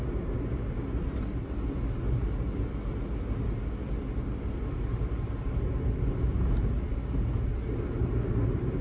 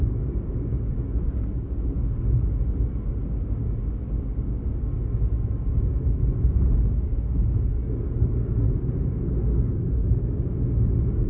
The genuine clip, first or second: first